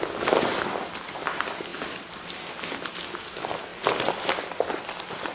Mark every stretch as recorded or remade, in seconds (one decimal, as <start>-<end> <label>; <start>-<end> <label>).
0.0-1.7 recorded; 1.7-2.5 remade; 2.5-3.7 recorded; 3.7-4.8 remade; 4.8-5.3 recorded